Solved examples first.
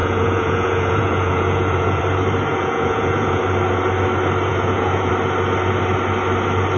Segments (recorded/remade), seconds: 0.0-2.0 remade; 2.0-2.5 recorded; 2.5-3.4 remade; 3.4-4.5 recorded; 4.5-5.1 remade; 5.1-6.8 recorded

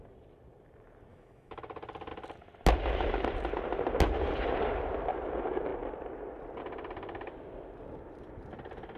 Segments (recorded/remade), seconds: 0.0-1.1 recorded; 1.1-1.6 remade; 1.6-9.0 recorded

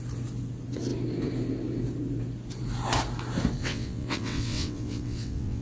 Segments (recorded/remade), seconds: 0.0-3.6 recorded; 3.6-5.6 remade

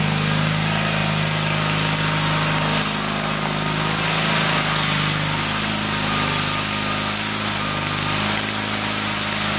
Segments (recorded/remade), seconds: 0.0-9.6 recorded

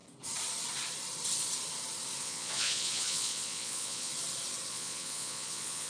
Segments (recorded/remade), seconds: 0.0-2.2 recorded; 2.2-4.1 remade; 4.1-4.7 recorded; 4.7-5.9 remade

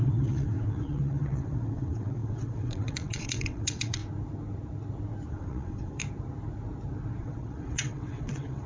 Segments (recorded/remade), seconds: 0.0-4.0 remade; 4.0-5.3 recorded; 5.3-6.0 remade; 6.0-7.2 recorded; 7.2-8.7 remade

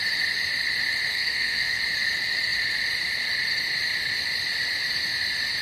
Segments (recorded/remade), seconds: 0.0-1.1 recorded; 1.1-1.8 remade; 1.8-5.6 recorded